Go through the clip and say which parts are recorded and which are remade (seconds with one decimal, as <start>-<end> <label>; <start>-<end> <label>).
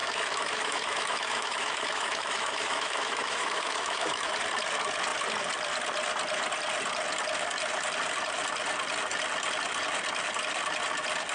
0.0-4.3 remade; 4.3-11.3 recorded